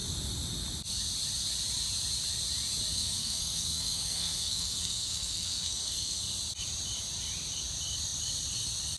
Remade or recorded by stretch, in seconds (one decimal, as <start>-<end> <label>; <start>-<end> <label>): 0.0-2.9 recorded; 2.9-6.2 remade; 6.2-9.0 recorded